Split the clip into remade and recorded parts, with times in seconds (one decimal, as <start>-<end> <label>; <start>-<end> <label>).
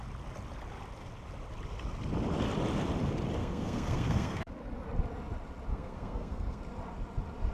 0.0-3.4 recorded; 3.4-4.5 remade; 4.5-5.7 recorded; 5.7-6.6 remade; 6.6-7.5 recorded